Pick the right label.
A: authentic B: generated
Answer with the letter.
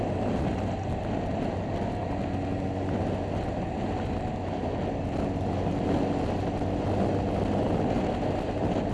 A